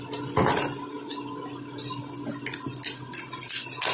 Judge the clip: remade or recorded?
recorded